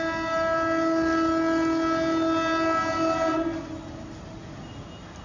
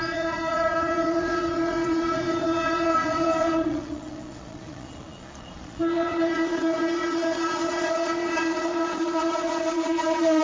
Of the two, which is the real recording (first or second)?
first